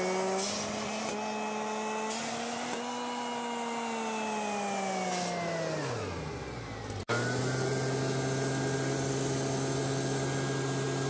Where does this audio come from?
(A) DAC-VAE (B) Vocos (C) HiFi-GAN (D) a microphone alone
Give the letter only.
D